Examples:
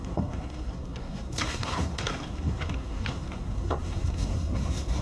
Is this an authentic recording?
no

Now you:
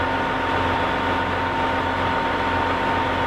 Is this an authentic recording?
yes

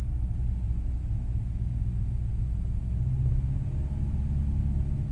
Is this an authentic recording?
yes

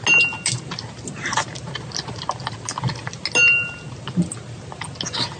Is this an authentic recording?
yes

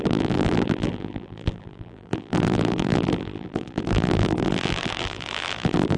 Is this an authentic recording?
no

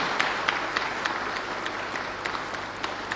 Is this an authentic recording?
yes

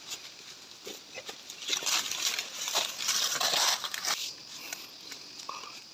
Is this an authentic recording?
yes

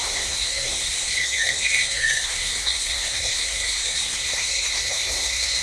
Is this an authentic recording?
no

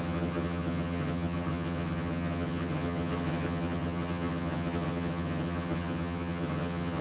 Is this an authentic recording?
no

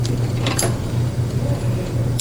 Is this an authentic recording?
no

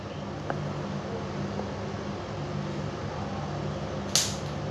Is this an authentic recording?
yes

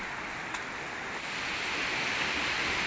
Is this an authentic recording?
yes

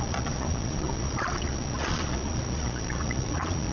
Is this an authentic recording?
no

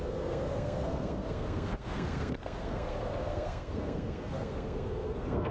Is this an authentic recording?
no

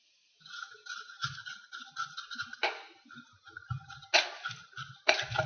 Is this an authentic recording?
yes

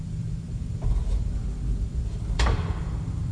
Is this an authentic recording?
no